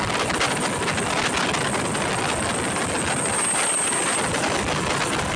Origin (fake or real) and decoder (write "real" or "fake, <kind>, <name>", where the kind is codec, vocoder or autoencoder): real